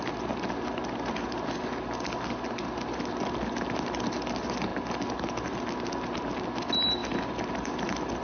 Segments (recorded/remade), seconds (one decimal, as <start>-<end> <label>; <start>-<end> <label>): 0.0-8.2 recorded